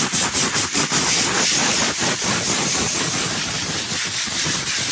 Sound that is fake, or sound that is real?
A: real